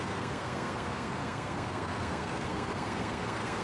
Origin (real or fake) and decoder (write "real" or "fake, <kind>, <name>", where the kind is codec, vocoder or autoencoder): fake, codec, SNAC